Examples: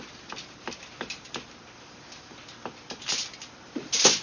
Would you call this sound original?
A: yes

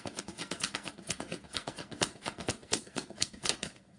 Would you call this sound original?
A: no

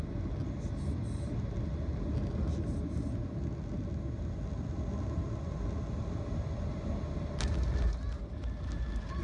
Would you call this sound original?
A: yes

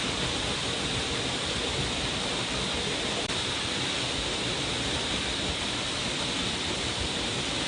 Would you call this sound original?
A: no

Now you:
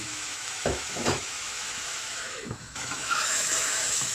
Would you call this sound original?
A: no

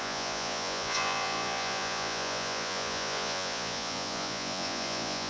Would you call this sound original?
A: no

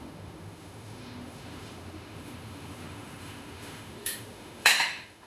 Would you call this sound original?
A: no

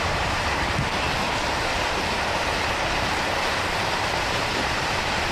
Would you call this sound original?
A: no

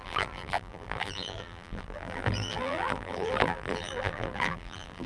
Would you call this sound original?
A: no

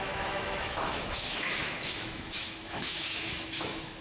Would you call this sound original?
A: no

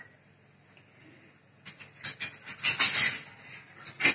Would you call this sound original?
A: yes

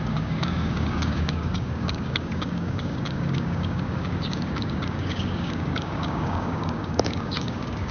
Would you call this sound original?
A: no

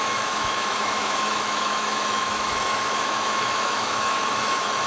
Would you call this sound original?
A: no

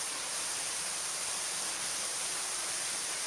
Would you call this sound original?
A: no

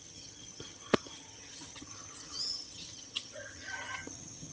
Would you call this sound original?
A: no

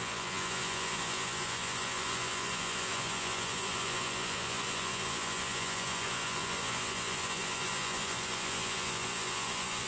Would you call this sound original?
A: no